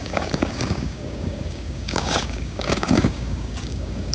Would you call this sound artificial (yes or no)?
yes